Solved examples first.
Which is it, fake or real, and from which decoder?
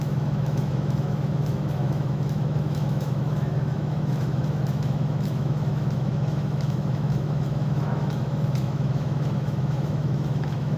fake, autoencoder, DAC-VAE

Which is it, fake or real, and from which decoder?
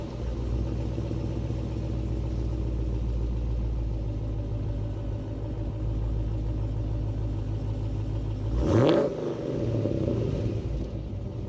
real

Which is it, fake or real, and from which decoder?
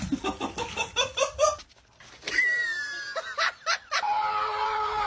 real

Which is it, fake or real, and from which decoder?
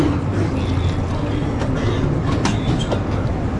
real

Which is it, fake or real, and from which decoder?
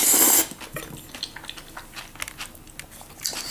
real